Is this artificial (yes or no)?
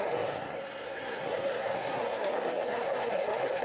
yes